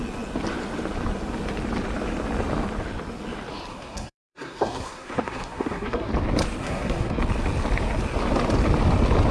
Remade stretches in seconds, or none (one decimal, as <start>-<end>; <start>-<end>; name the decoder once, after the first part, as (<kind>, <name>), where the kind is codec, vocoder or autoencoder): 3.7-6.1 (codec, SNAC); 6.6-7.2